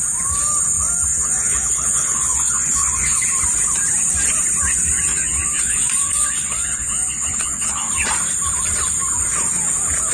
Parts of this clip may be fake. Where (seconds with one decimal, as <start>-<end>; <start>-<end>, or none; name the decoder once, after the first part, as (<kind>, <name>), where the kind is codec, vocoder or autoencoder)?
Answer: 1.1-3.2 (vocoder, Vocos); 5.1-7.9